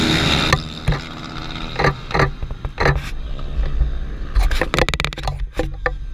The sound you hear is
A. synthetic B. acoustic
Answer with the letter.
B